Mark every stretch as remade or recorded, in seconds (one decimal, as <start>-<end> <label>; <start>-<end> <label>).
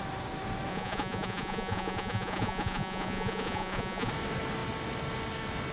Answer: 0.0-0.7 recorded; 0.7-4.1 remade; 4.1-5.7 recorded